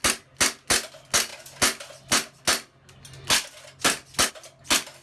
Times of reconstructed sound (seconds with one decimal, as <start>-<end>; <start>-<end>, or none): none